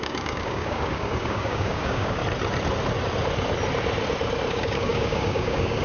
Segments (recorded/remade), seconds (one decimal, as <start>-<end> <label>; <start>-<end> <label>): 0.0-2.2 remade; 2.2-4.5 recorded; 4.5-5.8 remade